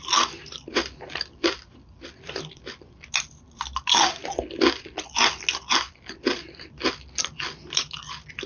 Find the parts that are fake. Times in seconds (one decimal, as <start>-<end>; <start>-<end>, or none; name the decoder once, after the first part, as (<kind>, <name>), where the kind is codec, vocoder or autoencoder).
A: none